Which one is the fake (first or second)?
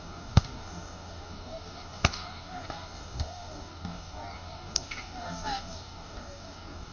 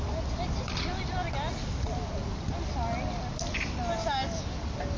first